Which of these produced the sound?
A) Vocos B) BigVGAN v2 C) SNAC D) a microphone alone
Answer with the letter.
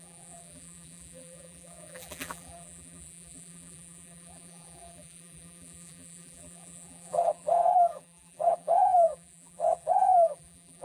B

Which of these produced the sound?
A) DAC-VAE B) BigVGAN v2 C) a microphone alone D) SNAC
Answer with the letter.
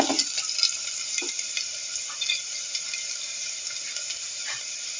C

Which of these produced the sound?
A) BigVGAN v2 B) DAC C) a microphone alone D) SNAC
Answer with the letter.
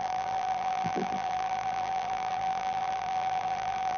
A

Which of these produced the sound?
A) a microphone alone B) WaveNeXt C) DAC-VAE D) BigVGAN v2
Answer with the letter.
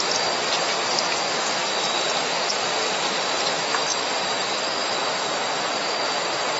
A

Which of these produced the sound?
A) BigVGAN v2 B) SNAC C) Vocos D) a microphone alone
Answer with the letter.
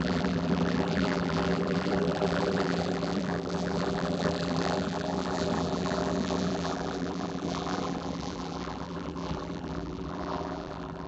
A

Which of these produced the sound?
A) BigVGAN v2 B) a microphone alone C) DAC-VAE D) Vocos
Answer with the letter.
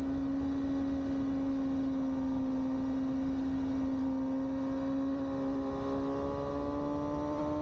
B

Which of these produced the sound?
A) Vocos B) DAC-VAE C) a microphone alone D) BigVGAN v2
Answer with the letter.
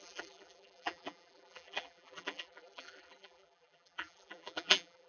D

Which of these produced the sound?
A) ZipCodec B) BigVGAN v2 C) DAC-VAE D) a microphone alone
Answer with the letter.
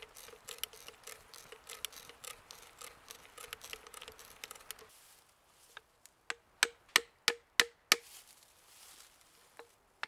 D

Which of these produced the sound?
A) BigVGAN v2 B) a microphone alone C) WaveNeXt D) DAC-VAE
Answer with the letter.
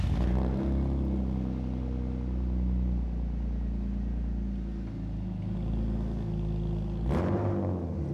B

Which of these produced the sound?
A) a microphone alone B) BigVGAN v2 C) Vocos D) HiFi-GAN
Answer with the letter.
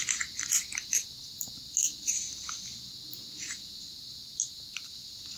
A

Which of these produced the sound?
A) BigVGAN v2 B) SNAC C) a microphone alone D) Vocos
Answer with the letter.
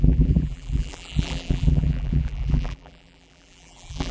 A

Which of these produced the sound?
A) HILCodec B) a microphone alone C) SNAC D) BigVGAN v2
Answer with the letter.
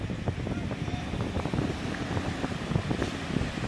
B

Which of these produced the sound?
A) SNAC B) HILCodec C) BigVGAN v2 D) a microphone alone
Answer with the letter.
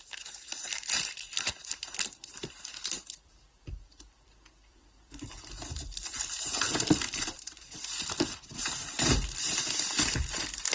C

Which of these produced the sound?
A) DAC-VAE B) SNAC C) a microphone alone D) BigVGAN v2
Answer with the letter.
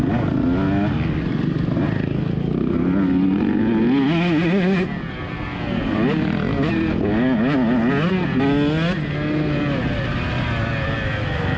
C